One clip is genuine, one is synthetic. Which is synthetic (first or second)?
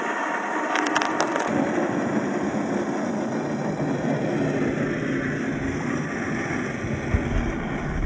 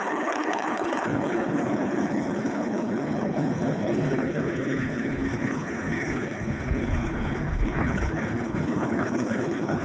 second